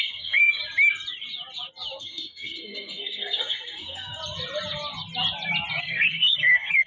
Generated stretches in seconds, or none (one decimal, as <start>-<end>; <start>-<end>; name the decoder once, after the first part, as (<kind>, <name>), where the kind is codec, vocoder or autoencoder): 0.0-0.6 (codec, SNAC); 2.0-4.2; 5.8-6.9